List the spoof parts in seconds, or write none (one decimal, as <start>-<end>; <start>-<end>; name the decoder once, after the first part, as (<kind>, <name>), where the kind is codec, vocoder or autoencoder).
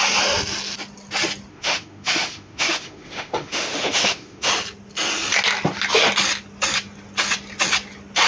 1.5-4.5 (autoencoder, DAC-VAE)